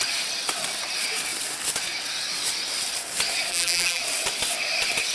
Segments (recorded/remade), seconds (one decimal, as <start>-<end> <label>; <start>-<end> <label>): 0.0-3.5 recorded; 3.5-4.0 remade; 4.0-5.1 recorded